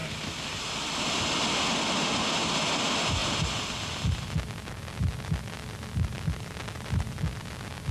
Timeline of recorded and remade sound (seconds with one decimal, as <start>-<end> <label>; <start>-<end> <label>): 0.0-7.9 recorded